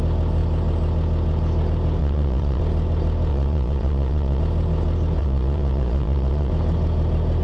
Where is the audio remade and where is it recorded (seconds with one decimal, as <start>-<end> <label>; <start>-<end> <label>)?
0.0-2.0 recorded; 2.0-2.6 remade; 2.6-3.3 recorded; 3.3-4.4 remade; 4.4-5.2 recorded; 5.2-6.5 remade; 6.5-7.4 recorded